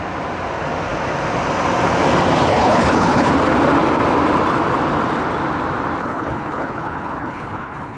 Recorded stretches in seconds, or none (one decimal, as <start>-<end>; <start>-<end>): 0.0-2.5; 3.3-6.0